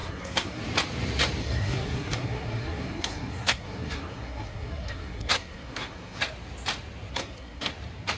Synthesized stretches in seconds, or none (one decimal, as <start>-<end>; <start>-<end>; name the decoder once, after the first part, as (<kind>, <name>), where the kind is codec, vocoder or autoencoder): 0.0-0.6 (codec, SNAC); 1.4-6.2; 7.1-7.7